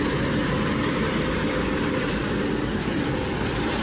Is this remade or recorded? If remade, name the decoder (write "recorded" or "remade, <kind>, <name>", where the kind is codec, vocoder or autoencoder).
remade, vocoder, BigVGAN v2